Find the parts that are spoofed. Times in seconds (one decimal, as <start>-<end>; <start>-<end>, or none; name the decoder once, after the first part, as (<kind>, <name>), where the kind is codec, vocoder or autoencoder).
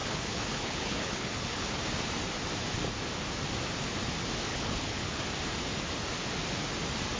0.0-1.8 (codec, HILCodec); 4.5-5.2